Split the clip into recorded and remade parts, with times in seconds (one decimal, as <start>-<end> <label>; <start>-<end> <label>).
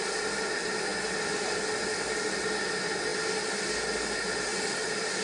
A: 0.0-3.1 recorded; 3.1-3.7 remade; 3.7-4.5 recorded; 4.5-5.2 remade